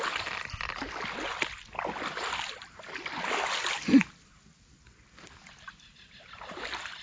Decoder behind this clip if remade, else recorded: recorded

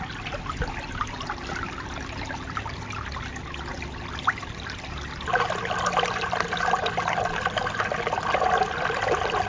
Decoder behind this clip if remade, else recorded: recorded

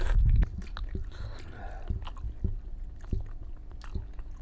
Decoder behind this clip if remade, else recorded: recorded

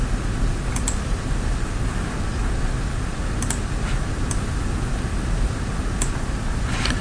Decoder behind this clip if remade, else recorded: recorded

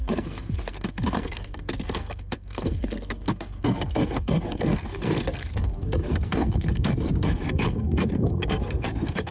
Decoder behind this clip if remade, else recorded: remade, codec, SNAC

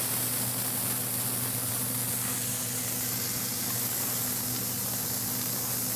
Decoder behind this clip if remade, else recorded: recorded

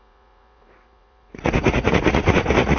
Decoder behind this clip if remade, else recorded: remade, vocoder, Vocos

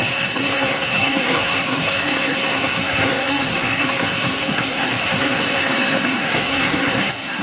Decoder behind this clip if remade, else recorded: remade, codec, SNAC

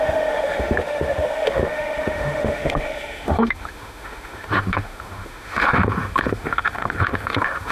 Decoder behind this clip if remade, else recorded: remade, autoencoder, DAC-VAE